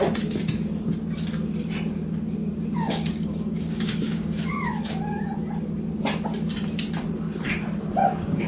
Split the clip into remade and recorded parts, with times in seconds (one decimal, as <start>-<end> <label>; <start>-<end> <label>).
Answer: 0.0-2.4 recorded; 2.4-4.5 remade; 4.5-8.0 recorded; 8.0-8.5 remade